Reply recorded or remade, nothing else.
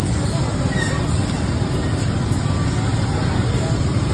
recorded